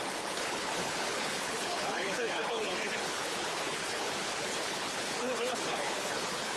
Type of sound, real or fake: fake